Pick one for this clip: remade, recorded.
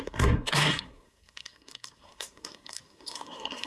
remade